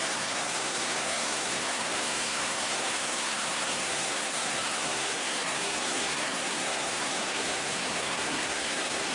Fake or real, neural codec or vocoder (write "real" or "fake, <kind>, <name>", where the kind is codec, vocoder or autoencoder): fake, codec, SNAC